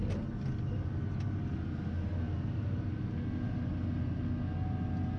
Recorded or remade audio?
recorded